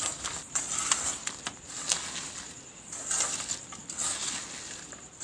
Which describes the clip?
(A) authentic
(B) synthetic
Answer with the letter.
A